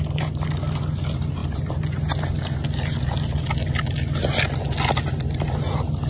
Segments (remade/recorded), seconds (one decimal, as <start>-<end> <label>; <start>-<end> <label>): 0.0-6.1 recorded